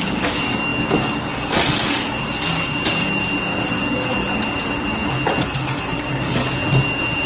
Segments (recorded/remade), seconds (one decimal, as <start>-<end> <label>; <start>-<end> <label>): 0.0-3.2 remade; 3.2-3.7 recorded; 3.7-4.3 remade; 4.3-5.4 recorded; 5.4-6.4 remade; 6.4-7.3 recorded